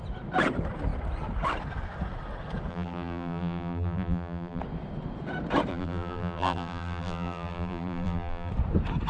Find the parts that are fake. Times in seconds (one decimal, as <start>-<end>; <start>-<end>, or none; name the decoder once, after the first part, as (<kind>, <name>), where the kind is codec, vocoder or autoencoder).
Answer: 2.7-4.6 (vocoder, BigVGAN v2); 5.7-8.5